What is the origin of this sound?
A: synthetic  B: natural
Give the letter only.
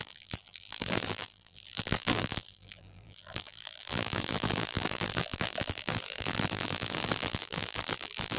A